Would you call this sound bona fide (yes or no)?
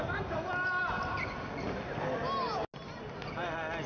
yes